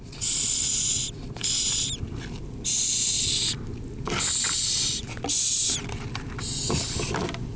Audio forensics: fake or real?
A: real